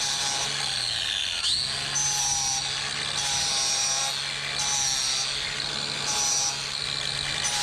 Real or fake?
real